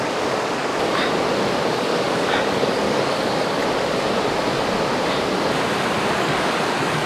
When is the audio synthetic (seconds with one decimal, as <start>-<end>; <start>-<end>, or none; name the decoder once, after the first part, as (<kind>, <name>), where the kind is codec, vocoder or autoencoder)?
0.0-0.7 (codec, DAC); 1.7-3.6; 6.2-7.1